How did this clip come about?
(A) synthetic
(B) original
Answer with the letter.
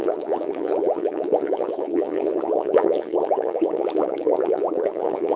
A